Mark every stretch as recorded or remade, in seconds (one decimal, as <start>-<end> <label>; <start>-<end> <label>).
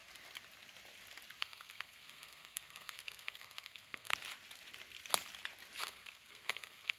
0.0-1.4 recorded; 1.4-4.1 remade; 4.1-5.8 recorded; 5.8-7.0 remade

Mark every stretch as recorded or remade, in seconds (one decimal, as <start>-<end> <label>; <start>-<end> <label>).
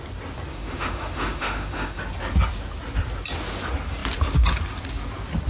0.0-0.5 recorded; 0.5-2.0 remade; 2.0-5.5 recorded